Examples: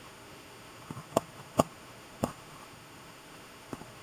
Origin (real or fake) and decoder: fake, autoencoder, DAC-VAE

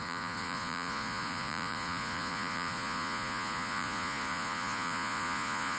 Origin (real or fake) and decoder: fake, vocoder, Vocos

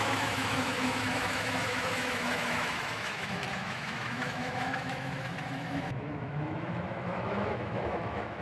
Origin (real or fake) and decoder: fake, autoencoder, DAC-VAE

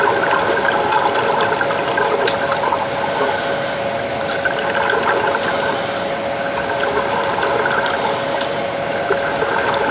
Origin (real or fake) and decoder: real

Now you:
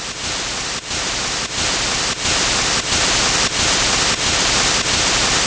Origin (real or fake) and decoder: real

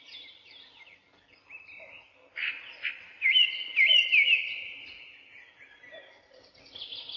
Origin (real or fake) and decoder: real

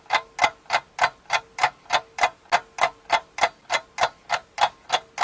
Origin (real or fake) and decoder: real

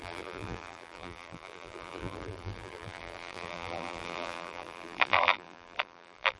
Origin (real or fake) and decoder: fake, vocoder, BigVGAN v2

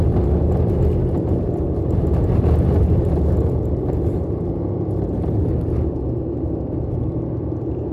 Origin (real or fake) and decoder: real